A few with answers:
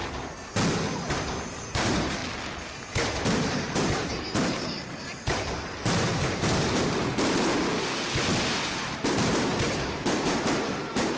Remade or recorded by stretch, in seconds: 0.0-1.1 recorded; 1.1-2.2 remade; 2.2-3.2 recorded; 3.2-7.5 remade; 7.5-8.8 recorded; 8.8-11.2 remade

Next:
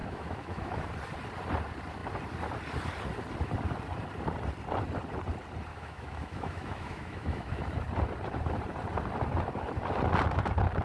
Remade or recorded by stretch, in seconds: 0.0-0.9 remade; 0.9-5.7 recorded; 5.7-7.6 remade; 7.6-10.8 recorded

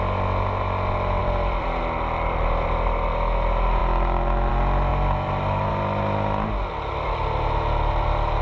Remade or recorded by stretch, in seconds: 0.0-1.2 recorded; 1.2-1.8 remade; 1.8-4.9 recorded; 4.9-5.7 remade; 5.7-8.4 recorded

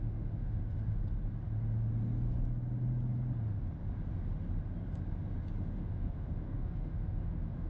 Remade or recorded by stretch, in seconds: 0.0-1.0 remade; 1.0-5.6 recorded; 5.6-7.7 remade

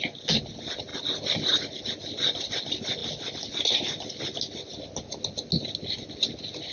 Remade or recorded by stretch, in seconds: 0.0-6.7 recorded

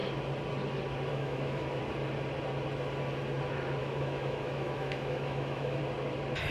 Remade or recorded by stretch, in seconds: 0.0-1.1 recorded; 1.1-1.8 remade; 1.8-3.8 recorded; 3.8-5.8 remade; 5.8-6.5 recorded

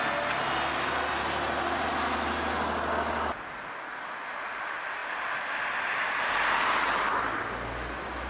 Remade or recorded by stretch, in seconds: 0.0-8.3 recorded

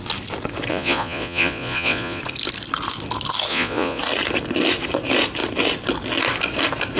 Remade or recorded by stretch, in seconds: 0.0-0.7 recorded; 0.7-2.2 remade; 2.2-3.5 recorded; 3.5-4.0 remade; 4.0-7.0 recorded